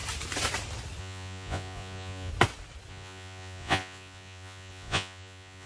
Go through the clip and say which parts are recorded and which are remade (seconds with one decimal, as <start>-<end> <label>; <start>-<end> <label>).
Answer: 0.0-1.0 recorded; 1.0-2.3 remade; 2.3-2.9 recorded; 2.9-5.7 remade